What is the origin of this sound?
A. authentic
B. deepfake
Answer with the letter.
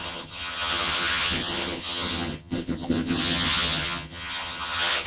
B